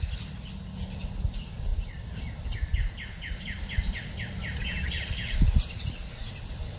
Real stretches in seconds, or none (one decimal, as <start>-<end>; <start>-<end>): 0.0-6.8